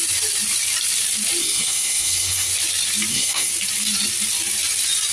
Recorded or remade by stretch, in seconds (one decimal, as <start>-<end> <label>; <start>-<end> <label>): 0.0-1.4 recorded; 1.4-2.5 remade; 2.5-3.1 recorded; 3.1-3.5 remade; 3.5-5.1 recorded